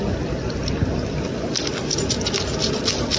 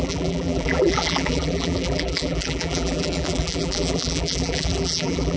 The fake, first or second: second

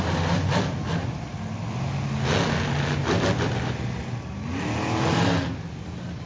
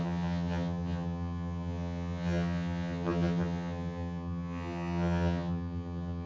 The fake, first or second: second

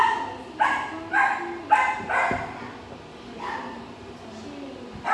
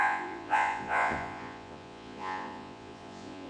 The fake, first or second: second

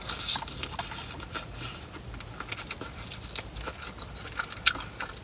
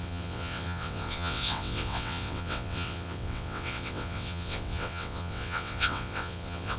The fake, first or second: second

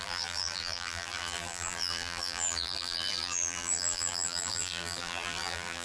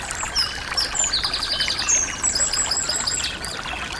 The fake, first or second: first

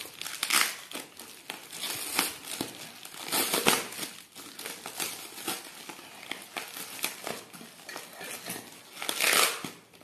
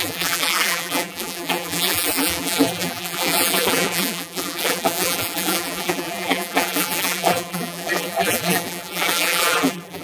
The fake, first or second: second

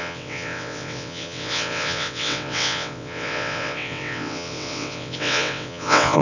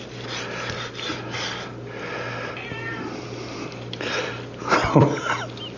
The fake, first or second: first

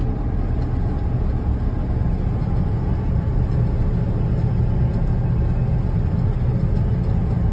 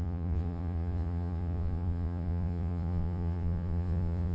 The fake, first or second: second